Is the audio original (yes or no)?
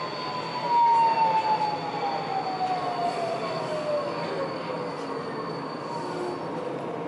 yes